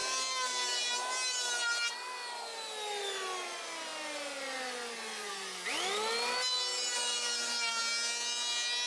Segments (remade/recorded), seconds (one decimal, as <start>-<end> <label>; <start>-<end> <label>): 0.0-0.9 remade; 0.9-6.7 recorded; 6.7-7.8 remade; 7.8-8.9 recorded